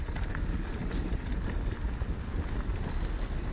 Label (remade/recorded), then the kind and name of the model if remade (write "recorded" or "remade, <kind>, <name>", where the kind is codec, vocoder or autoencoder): recorded